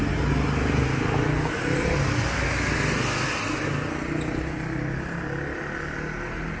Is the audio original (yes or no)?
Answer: yes